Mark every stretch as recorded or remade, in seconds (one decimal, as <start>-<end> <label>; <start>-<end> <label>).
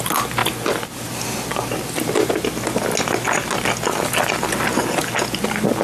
0.0-5.8 recorded